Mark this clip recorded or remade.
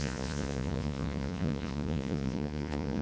remade